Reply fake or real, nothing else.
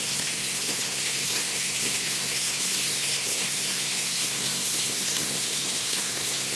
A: fake